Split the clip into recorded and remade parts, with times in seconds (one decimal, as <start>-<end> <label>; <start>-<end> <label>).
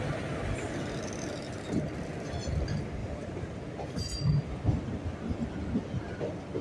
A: 0.0-3.0 recorded; 3.0-3.6 remade; 3.6-6.6 recorded